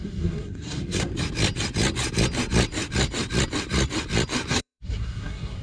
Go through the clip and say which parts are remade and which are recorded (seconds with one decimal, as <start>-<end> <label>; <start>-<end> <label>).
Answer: 0.0-1.1 remade; 1.1-4.5 recorded; 4.5-5.6 remade